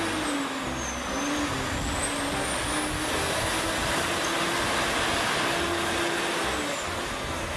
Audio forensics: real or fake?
real